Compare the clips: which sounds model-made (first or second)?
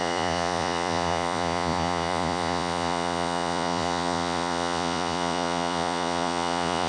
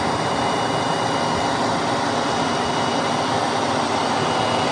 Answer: first